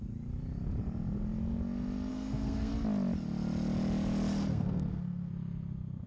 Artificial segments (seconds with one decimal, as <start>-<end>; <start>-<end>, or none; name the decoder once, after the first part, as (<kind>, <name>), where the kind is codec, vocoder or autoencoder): 2.1-2.7 (codec, SNAC); 4.5-5.3